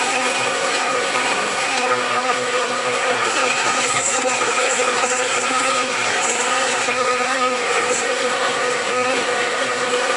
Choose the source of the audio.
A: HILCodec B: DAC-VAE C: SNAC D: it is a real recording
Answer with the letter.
C